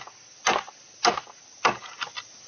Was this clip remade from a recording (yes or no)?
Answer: no